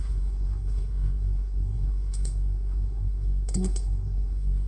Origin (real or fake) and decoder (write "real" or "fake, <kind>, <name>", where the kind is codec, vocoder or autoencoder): fake, codec, SNAC